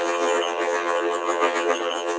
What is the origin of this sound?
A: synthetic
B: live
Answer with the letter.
A